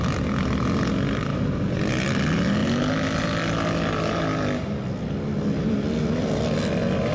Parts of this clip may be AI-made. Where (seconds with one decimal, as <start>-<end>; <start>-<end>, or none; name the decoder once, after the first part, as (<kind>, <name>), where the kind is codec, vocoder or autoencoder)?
none